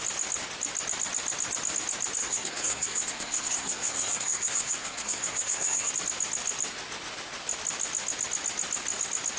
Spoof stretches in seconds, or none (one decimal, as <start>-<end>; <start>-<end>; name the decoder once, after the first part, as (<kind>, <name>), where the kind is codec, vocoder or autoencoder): 2.2-5.9 (codec, SNAC)